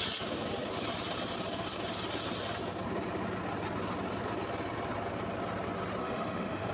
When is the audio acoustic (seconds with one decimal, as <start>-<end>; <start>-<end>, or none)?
0.0-6.0